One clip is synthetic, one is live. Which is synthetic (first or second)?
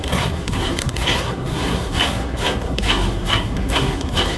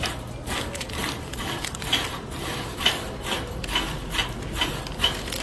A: first